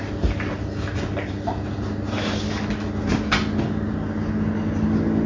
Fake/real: real